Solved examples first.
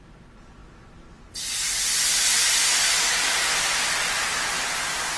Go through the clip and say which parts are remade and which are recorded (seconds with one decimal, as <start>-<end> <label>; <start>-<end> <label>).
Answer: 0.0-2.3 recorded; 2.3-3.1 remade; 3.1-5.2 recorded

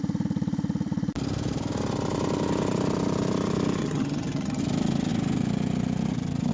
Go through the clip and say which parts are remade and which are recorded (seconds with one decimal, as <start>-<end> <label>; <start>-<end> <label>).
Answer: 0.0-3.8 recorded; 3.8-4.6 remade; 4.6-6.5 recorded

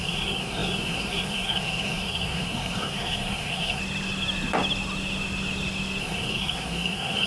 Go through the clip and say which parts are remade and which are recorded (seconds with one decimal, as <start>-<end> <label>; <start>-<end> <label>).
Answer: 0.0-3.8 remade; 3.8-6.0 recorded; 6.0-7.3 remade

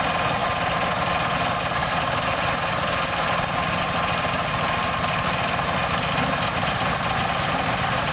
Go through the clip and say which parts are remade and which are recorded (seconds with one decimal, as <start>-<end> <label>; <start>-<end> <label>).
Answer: 0.0-0.4 recorded; 0.4-1.1 remade; 1.1-1.8 recorded; 1.8-6.7 remade; 6.7-8.1 recorded

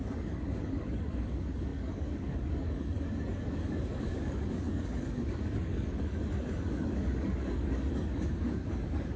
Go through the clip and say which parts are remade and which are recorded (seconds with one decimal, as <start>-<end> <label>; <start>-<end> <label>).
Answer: 0.0-9.2 remade